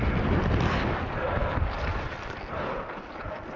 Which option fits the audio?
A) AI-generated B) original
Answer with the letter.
B